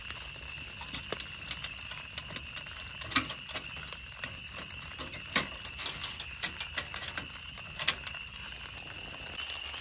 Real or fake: real